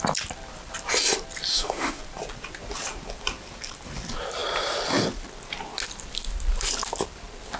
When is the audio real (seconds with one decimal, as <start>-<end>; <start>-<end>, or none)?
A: 0.0-1.5; 2.0-7.6